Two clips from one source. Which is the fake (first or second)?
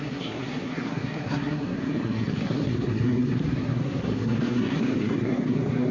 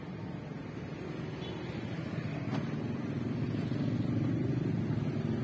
first